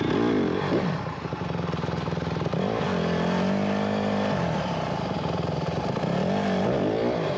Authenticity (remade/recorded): remade